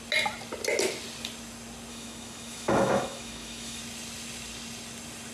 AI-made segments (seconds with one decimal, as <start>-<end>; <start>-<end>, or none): 1.9-3.8